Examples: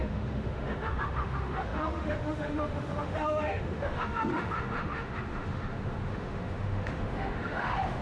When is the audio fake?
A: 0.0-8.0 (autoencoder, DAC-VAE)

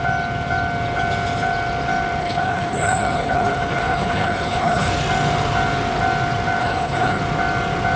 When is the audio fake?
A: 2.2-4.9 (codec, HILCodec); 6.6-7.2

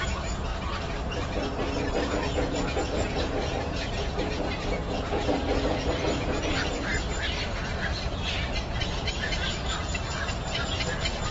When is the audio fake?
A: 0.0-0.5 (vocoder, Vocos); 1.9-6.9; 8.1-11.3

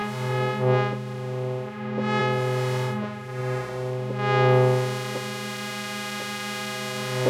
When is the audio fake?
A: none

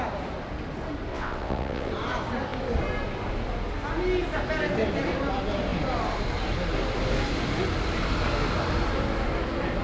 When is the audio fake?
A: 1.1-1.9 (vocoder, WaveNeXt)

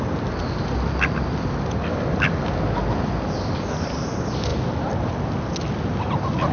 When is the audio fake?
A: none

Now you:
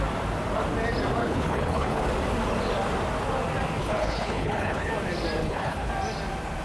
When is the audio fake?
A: 1.2-2.0 (codec, HILCodec); 3.8-4.9; 5.4-5.9

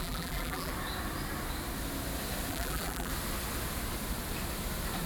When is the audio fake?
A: 0.0-0.7 (vocoder, BigVGAN v2); 2.5-3.1